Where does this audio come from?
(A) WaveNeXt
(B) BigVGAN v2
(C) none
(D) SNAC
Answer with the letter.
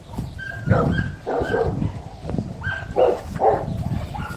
B